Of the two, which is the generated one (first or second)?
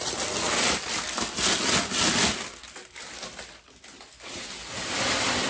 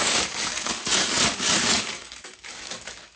second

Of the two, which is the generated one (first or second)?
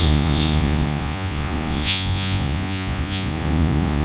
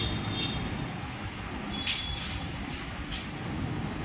first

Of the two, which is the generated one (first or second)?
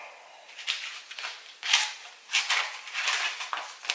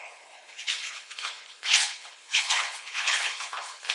second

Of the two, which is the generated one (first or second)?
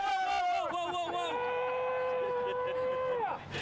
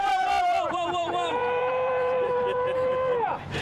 second